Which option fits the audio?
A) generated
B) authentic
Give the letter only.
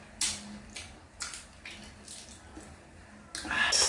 B